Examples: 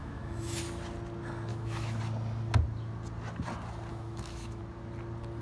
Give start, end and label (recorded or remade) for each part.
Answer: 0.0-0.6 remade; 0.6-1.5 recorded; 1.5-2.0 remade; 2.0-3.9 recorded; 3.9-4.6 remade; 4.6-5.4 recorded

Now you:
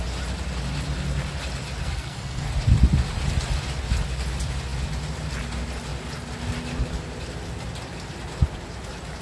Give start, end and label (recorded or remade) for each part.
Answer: 0.0-1.8 recorded; 1.8-2.5 remade; 2.5-9.2 recorded

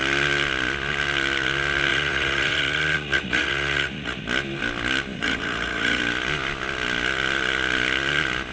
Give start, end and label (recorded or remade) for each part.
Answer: 0.0-1.9 recorded; 1.9-4.2 remade; 4.2-5.1 recorded; 5.1-6.0 remade; 6.0-8.5 recorded